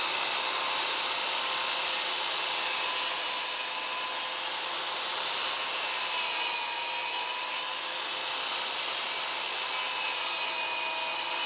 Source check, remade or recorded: recorded